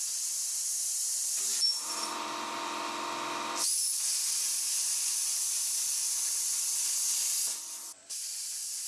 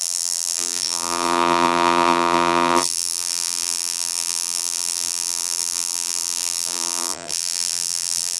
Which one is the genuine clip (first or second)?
first